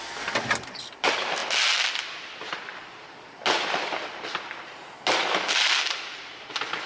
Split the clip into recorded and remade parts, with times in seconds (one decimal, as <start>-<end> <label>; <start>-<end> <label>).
0.0-6.9 recorded